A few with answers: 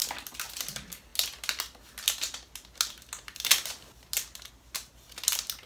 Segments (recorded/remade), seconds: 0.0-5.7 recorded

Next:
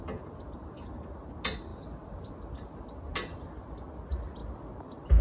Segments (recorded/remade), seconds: 0.0-5.2 recorded

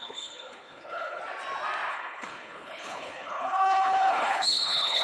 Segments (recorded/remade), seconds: 0.0-1.2 remade; 1.2-1.9 recorded; 1.9-5.0 remade

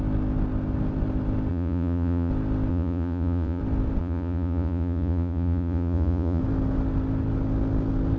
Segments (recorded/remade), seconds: 0.0-1.5 recorded; 1.5-2.3 remade; 2.3-2.7 recorded; 2.7-3.6 remade; 3.6-4.0 recorded; 4.0-6.4 remade; 6.4-8.2 recorded

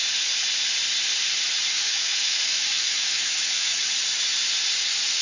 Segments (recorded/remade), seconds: 0.0-1.7 recorded; 1.7-3.9 remade; 3.9-5.2 recorded

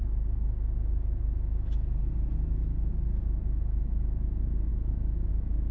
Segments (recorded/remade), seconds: 0.0-4.7 recorded; 4.7-5.3 remade; 5.3-5.7 recorded

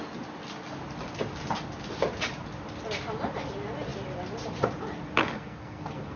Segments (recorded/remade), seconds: 0.0-5.2 recorded; 5.2-6.2 remade

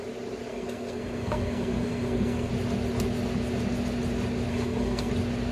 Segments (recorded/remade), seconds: 0.0-0.5 recorded; 0.5-2.5 remade; 2.5-4.5 recorded; 4.5-5.1 remade; 5.1-5.5 recorded